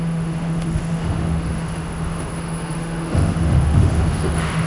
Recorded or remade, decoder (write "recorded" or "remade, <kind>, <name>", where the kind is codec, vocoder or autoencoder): remade, autoencoder, DAC-VAE